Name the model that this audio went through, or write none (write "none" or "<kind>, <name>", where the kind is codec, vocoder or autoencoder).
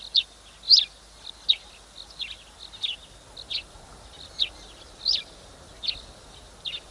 none